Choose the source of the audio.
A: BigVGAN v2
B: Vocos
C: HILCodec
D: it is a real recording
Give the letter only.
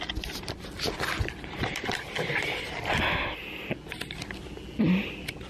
D